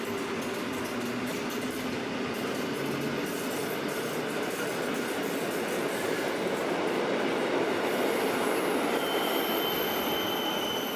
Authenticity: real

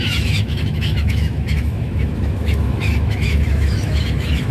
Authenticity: fake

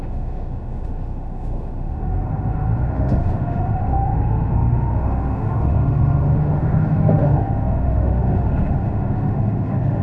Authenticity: fake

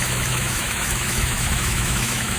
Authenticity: fake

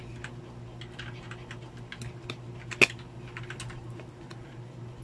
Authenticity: real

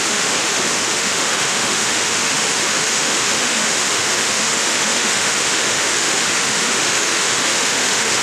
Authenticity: fake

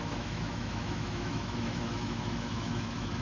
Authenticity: fake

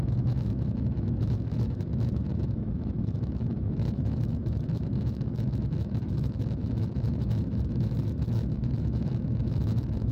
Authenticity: fake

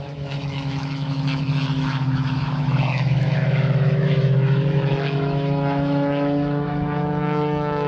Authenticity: fake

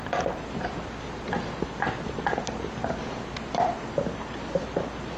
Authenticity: real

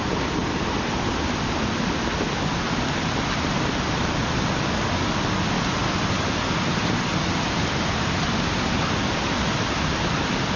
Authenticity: real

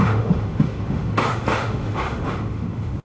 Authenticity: fake